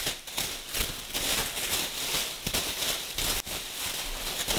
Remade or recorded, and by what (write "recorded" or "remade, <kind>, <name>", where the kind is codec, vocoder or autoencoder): recorded